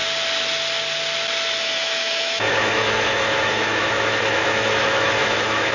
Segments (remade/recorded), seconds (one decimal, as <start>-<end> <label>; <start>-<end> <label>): 0.0-1.6 recorded; 1.6-5.7 remade